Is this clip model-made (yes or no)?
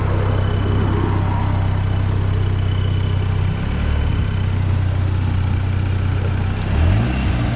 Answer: no